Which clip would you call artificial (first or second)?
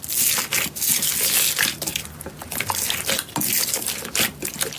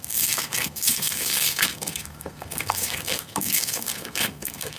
second